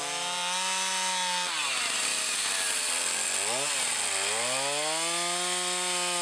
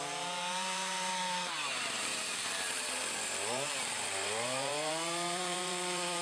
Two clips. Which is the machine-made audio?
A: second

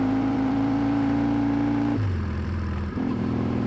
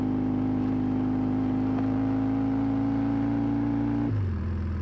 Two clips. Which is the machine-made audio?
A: first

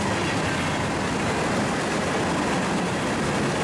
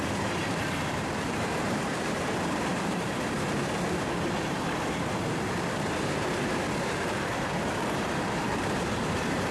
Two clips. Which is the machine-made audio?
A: second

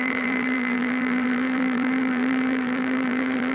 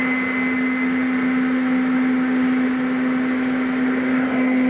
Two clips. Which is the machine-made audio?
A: first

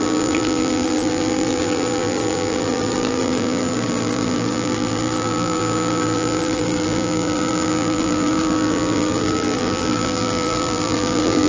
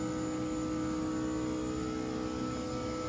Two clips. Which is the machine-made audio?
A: first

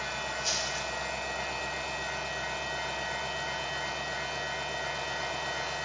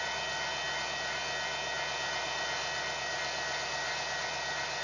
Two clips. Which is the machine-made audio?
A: second